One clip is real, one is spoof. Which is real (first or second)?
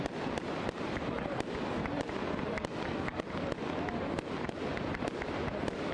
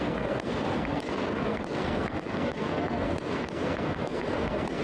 first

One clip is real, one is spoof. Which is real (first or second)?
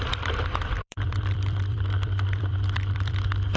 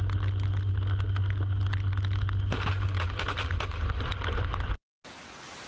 second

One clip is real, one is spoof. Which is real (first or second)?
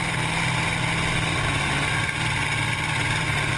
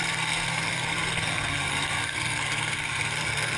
first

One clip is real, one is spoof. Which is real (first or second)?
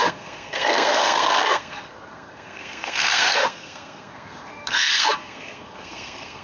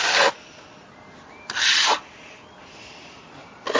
second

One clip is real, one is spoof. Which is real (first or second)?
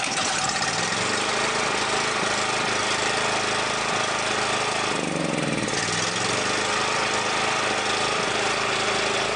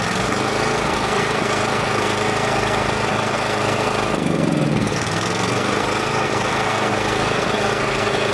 first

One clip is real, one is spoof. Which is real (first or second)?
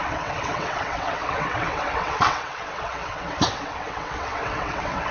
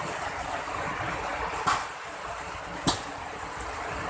second